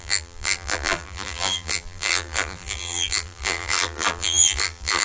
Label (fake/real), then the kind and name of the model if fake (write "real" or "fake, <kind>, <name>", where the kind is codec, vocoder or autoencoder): fake, vocoder, BigVGAN v2